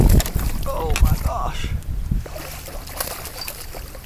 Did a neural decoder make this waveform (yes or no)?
no